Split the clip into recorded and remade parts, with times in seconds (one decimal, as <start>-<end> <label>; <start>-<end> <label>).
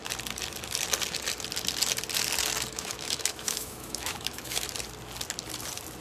0.0-2.7 recorded; 2.7-4.7 remade; 4.7-6.0 recorded